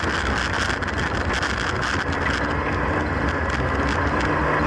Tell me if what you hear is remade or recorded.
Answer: recorded